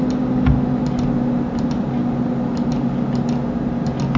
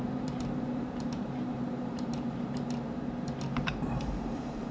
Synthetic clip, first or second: second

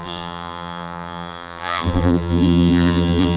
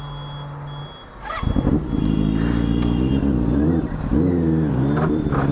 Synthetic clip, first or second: first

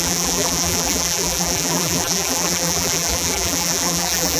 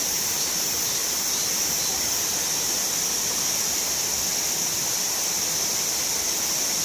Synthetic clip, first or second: first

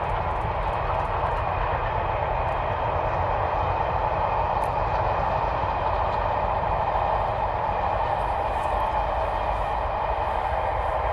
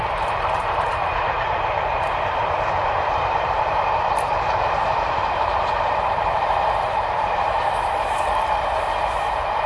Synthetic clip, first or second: second